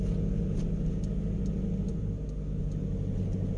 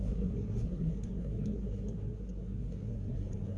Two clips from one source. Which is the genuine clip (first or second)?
first